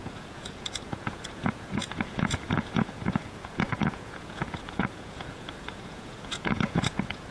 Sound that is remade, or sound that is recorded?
remade